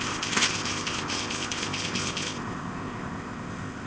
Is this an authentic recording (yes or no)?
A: no